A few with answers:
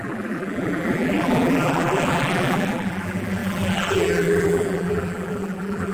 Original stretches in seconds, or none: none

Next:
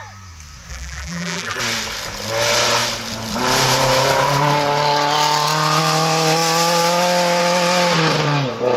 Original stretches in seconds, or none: 0.0-0.7; 1.6-8.8

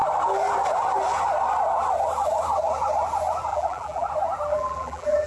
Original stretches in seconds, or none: 0.0-3.5; 4.1-4.5

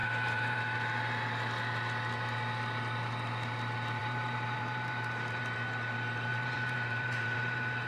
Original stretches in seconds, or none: 0.6-4.0; 5.4-6.3

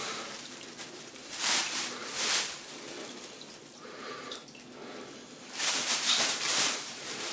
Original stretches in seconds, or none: 1.6-3.6; 4.4-5.7

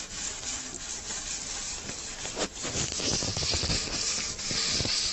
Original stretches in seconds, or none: 0.0-3.3

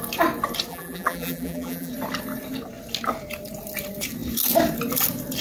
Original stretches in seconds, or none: 0.0-0.7; 1.9-5.4

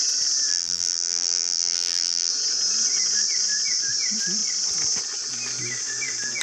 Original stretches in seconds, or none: 0.0-0.5; 2.3-6.4